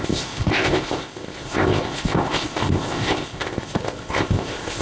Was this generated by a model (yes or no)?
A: yes